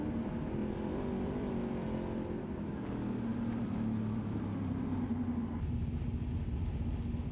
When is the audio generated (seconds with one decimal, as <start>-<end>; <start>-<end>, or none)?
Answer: 0.6-1.6; 3.3-5.8